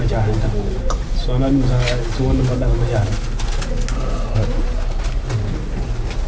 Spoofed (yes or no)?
no